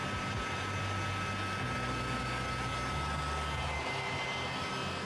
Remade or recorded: recorded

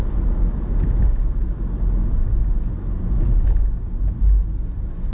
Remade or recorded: recorded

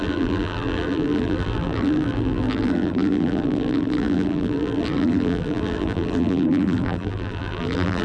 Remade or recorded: remade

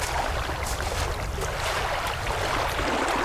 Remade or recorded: recorded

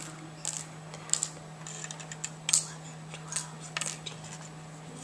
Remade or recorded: recorded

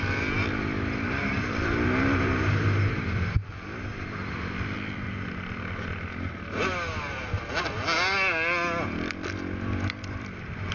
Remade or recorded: recorded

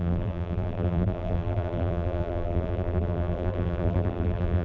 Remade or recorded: remade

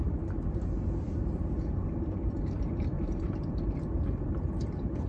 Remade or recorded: remade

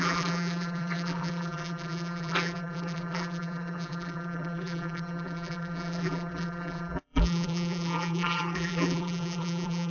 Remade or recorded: remade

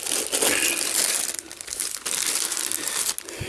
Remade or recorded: recorded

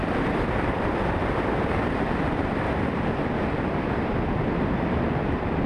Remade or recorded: remade